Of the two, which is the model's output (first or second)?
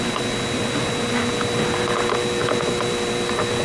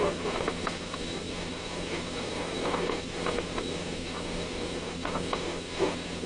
second